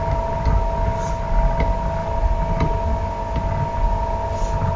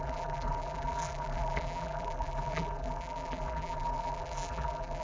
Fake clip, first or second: second